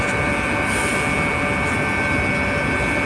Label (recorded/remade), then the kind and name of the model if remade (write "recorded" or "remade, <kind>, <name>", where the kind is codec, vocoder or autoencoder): recorded